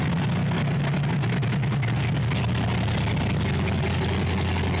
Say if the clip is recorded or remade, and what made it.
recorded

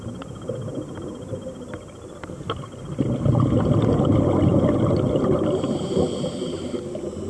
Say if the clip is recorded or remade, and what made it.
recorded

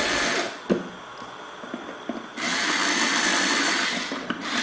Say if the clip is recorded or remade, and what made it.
recorded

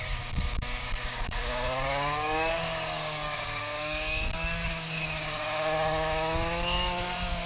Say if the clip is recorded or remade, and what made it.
remade, codec, DAC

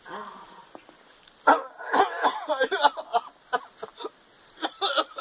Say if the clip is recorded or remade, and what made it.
recorded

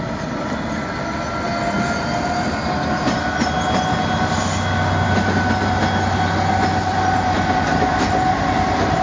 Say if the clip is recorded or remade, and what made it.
recorded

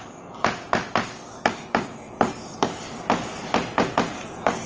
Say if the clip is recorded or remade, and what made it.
recorded